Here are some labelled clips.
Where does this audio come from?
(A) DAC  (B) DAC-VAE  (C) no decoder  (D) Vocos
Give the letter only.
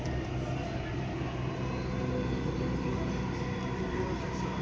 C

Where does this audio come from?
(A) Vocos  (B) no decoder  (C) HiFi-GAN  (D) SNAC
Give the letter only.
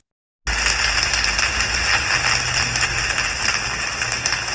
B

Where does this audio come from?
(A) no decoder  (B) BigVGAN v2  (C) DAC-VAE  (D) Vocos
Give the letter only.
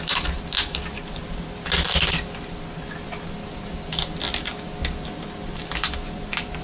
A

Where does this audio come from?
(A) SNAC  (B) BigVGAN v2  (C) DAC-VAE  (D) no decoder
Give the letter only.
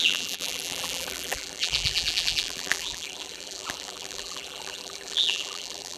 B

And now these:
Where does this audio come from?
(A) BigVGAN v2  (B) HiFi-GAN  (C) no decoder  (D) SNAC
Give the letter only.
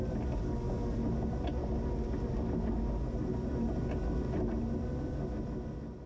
C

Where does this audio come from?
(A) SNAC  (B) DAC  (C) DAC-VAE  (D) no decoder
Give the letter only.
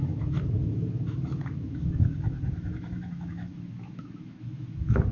C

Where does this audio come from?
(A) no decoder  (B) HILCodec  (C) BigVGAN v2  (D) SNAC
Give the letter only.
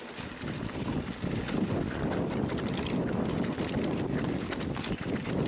A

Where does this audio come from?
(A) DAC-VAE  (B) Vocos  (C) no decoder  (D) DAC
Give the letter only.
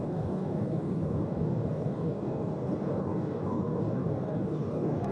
D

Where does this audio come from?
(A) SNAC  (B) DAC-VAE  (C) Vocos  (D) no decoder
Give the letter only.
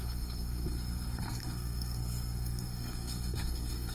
A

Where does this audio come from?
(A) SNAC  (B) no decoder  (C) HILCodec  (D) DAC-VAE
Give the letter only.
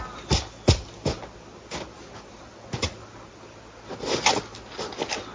B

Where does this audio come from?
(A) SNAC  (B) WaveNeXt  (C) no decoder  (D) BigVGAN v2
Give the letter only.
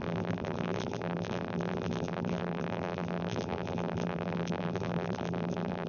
D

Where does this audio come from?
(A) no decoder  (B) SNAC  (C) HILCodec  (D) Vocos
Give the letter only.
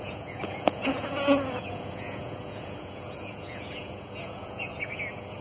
D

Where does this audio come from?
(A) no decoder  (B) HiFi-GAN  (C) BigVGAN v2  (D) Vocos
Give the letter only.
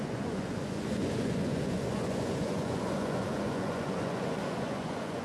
D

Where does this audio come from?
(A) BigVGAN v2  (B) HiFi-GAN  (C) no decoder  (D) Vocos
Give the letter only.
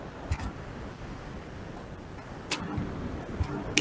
C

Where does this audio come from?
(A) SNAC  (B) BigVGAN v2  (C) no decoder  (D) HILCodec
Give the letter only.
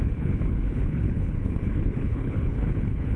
D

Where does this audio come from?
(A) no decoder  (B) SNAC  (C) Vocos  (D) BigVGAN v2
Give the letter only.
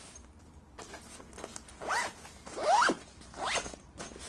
A